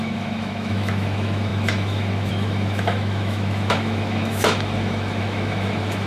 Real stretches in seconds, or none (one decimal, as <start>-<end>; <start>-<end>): none